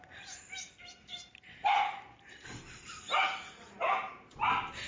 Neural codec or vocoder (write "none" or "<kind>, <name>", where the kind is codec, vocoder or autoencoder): none